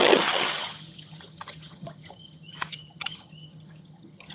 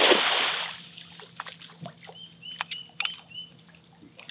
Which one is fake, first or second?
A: first